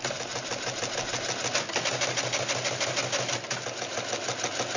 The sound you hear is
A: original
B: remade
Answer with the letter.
A